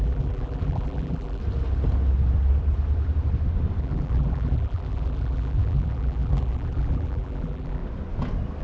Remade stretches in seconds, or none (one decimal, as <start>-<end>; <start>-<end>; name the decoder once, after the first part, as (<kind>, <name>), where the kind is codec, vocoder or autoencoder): 0.0-1.4 (vocoder, BigVGAN v2); 3.8-7.8